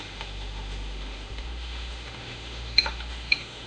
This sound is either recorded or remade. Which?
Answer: remade